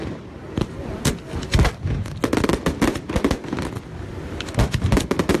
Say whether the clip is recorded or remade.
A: recorded